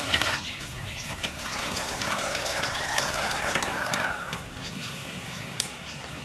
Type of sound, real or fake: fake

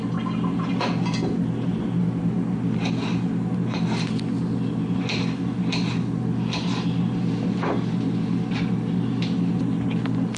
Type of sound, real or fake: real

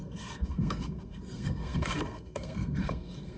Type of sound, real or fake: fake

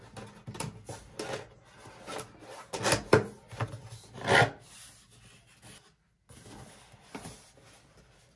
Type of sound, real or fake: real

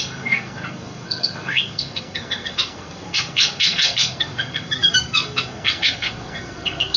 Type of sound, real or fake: fake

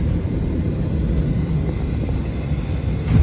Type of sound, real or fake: real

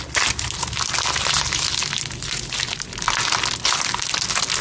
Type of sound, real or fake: real